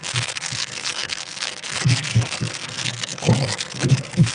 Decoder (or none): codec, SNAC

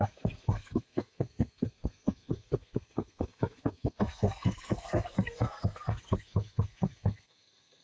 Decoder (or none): codec, SNAC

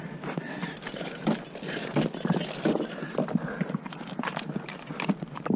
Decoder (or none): vocoder, BigVGAN v2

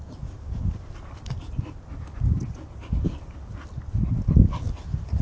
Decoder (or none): none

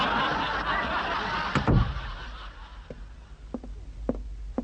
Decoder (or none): none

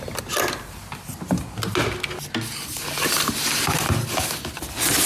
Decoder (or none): none